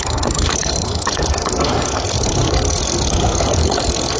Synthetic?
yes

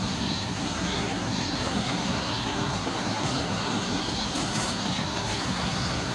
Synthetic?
yes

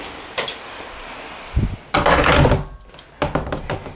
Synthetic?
no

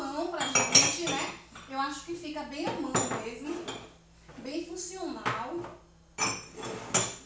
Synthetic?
no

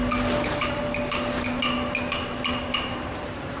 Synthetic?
no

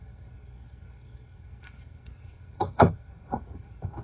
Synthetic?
yes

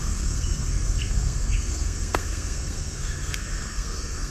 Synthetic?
yes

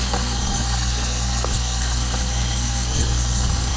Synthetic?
yes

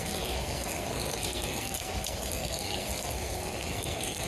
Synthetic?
yes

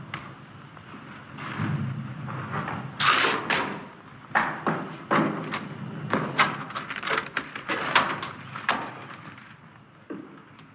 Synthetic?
no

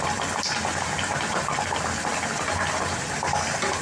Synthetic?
no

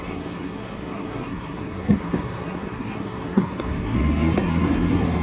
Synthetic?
yes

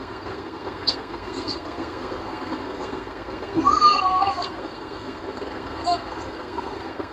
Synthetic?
yes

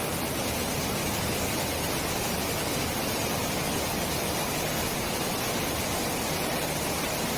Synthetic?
no